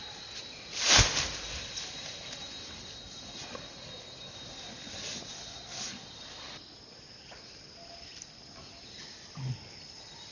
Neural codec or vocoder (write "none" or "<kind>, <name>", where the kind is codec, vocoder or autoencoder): none